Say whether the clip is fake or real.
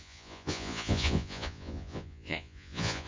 fake